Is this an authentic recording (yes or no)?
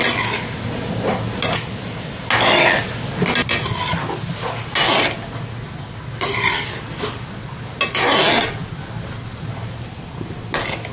yes